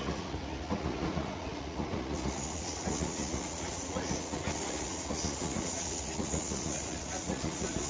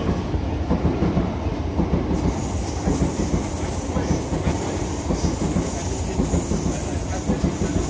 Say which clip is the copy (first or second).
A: first